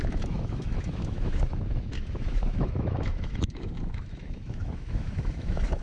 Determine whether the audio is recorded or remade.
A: remade